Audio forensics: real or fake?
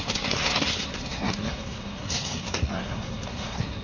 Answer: fake